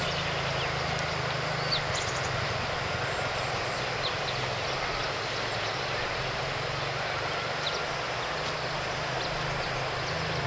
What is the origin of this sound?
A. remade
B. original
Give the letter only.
B